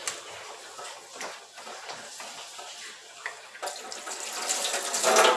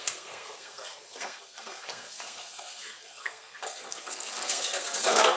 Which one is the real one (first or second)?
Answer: first